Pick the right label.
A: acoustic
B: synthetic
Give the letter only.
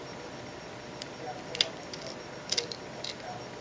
A